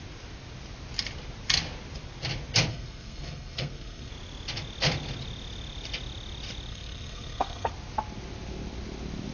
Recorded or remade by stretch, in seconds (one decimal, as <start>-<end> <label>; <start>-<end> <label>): 0.0-2.7 recorded; 2.7-4.1 remade; 4.1-6.7 recorded; 6.7-7.7 remade; 7.7-9.3 recorded